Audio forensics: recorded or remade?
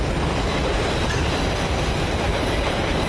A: remade